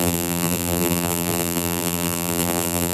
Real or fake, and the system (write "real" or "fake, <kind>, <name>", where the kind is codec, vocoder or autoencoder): fake, vocoder, BigVGAN v2